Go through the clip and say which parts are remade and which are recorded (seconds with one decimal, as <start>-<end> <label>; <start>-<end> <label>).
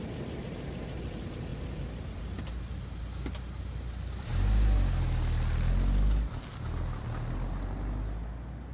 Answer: 0.0-8.7 recorded